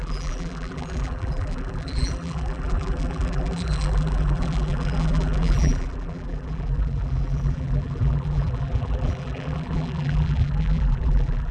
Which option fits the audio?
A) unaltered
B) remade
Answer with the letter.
B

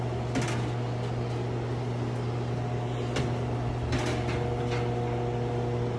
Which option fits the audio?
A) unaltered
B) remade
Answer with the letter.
A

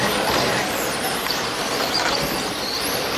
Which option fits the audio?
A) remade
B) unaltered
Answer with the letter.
B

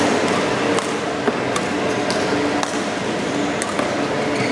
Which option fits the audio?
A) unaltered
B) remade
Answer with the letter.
A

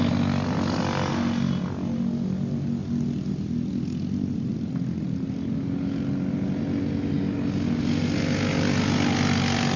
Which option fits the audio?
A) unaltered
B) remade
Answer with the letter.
A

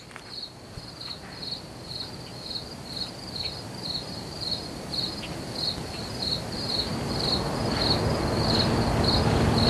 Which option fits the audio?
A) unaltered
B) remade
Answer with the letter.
A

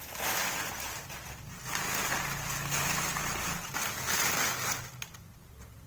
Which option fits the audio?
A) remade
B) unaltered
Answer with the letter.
B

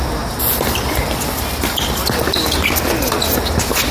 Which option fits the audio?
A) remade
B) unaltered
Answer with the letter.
B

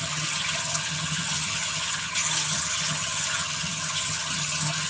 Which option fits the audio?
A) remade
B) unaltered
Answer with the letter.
A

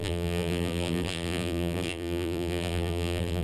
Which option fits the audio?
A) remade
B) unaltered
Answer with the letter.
A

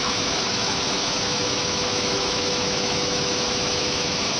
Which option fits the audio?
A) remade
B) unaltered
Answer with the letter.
A